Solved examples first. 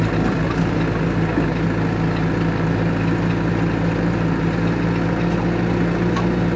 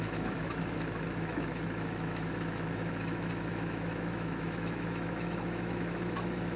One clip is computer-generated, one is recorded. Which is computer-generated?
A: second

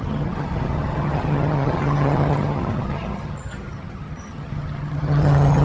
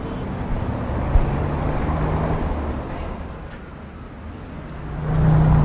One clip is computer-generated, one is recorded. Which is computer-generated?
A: first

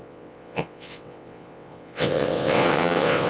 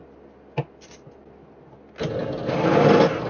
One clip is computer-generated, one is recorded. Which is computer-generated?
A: first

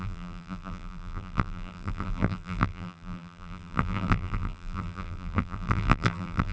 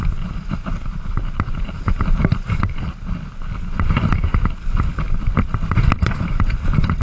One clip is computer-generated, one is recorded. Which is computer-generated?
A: first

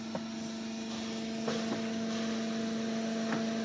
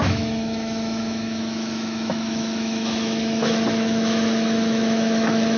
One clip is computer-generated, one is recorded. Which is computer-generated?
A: second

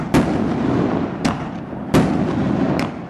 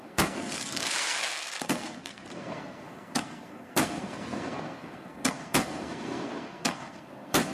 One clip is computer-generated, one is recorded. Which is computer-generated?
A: second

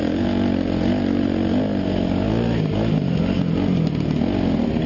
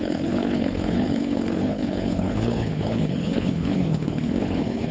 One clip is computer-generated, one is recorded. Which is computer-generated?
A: second